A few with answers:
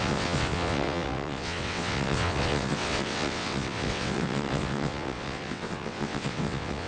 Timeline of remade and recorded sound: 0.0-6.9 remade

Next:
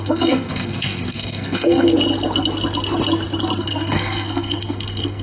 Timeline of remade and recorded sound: 0.0-1.9 remade; 1.9-3.6 recorded; 3.6-5.2 remade

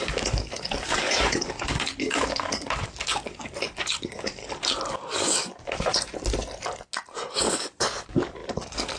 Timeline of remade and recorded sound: 0.0-4.4 remade; 4.4-4.9 recorded; 4.9-5.9 remade; 5.9-7.3 recorded; 7.3-9.0 remade

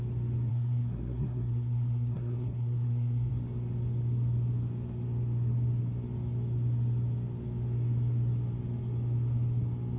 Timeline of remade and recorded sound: 0.0-0.5 recorded; 0.5-3.3 remade; 3.3-10.0 recorded

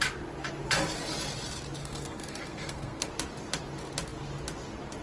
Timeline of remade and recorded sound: 0.0-1.8 recorded; 1.8-3.1 remade; 3.1-5.0 recorded

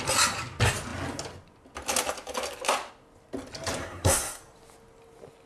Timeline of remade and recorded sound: 0.0-3.8 recorded; 3.8-4.4 remade; 4.4-5.5 recorded

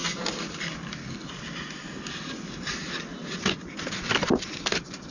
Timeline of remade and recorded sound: 0.0-5.1 recorded